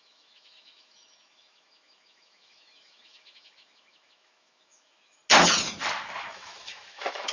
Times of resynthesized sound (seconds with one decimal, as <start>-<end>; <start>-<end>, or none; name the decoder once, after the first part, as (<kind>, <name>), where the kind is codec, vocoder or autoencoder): 0.0-5.2 (autoencoder, DAC-VAE); 6.2-7.3